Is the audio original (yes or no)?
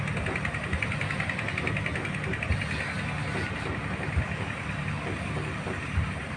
yes